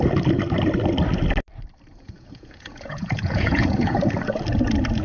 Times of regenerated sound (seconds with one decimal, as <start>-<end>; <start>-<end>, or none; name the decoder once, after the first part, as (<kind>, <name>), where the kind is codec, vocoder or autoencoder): 1.9-4.0 (vocoder, Vocos)